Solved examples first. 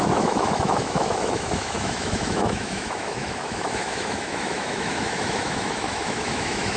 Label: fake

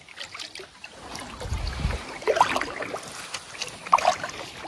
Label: real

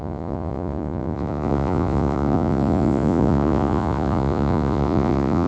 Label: fake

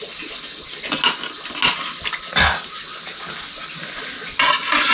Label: real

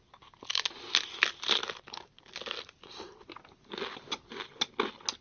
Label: real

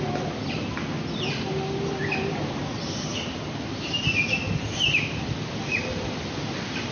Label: real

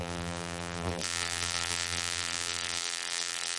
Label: fake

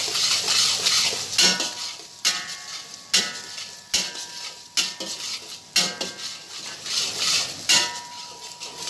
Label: real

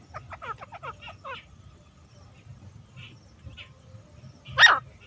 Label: real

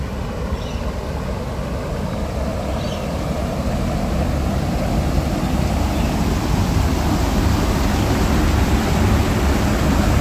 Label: real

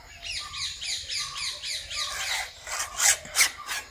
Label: real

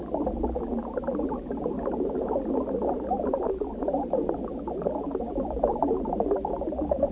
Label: real